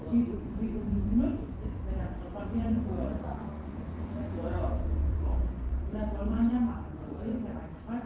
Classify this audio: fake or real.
fake